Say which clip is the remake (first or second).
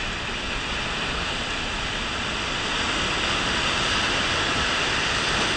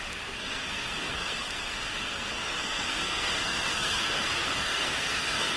second